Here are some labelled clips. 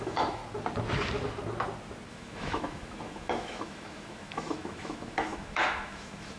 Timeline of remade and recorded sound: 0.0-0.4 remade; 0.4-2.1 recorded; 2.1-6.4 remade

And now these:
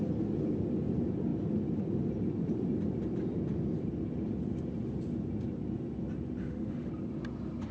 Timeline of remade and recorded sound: 0.0-6.4 recorded; 6.4-6.9 remade; 6.9-7.7 recorded

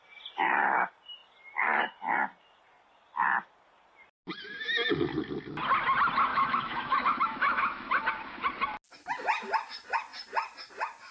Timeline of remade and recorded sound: 0.0-6.3 recorded; 6.3-8.0 remade; 8.0-11.1 recorded